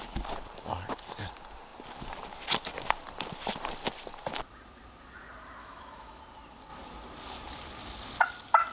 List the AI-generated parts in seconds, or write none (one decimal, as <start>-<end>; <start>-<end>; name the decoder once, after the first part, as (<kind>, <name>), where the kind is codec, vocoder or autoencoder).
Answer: 5.6-6.2 (autoencoder, DAC-VAE)